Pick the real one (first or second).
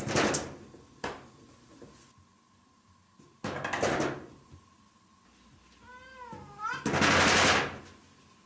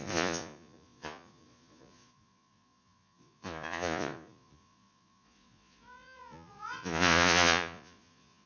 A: first